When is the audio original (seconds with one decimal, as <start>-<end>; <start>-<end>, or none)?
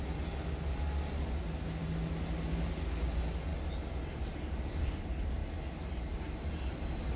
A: 0.0-7.2